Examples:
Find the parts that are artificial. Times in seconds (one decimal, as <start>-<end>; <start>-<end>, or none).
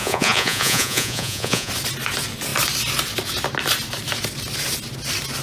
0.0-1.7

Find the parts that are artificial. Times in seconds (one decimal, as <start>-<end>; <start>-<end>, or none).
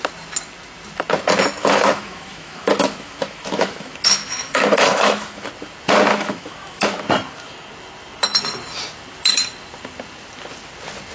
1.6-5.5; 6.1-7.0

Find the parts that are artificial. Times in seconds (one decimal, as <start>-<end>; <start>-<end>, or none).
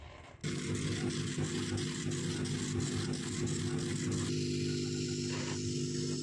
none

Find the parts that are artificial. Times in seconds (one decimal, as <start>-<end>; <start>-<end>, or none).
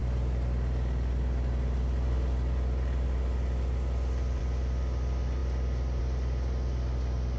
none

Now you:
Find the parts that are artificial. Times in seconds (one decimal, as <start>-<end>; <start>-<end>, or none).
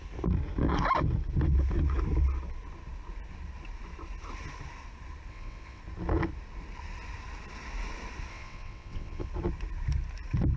5.3-5.8; 8.3-9.3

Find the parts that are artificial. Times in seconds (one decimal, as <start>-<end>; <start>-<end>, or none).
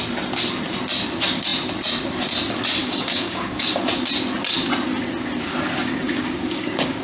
2.8-3.8; 5.8-7.0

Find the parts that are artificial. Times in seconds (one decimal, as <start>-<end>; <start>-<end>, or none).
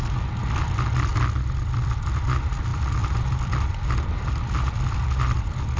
none